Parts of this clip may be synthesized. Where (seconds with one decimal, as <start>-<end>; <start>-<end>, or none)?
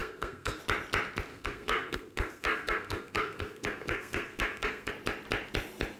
0.0-0.6; 1.3-4.9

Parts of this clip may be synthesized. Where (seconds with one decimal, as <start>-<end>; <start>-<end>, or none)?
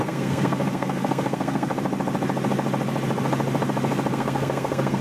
0.0-1.7; 4.1-5.0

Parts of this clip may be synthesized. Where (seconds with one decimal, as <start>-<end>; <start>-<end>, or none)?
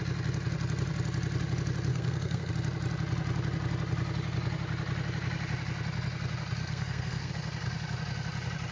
1.9-2.5; 6.6-7.3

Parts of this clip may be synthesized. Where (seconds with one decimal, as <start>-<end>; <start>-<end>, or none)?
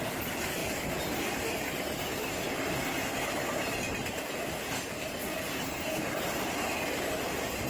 none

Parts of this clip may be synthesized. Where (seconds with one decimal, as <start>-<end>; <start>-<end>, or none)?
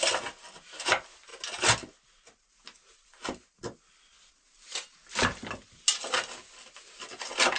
none